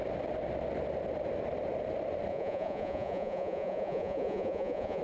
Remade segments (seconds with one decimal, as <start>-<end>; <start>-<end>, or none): 2.3-5.0